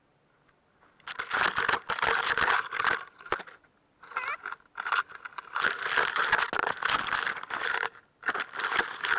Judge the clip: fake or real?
real